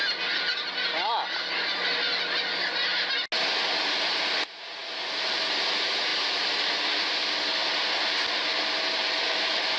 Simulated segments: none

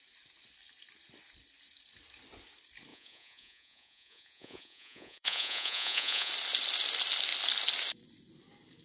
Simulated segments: 2.9-6.3 (vocoder, Vocos)

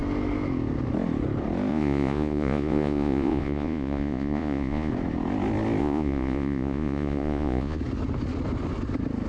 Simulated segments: 1.7-4.9 (vocoder, Vocos); 5.8-7.8

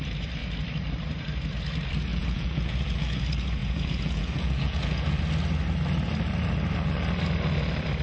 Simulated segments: 2.1-3.2 (vocoder, Vocos); 3.6-5.2

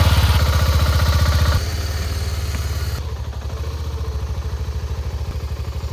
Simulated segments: none

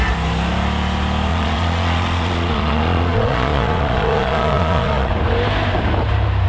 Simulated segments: 1.3-5.1 (vocoder, Vocos)